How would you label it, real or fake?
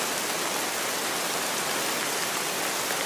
fake